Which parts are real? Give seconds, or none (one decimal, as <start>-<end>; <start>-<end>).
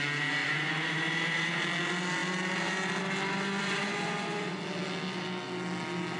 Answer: 0.0-0.4; 1.6-3.6; 4.6-6.2